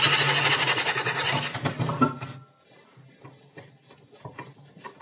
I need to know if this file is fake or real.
real